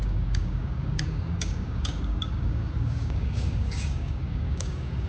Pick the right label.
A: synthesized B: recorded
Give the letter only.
A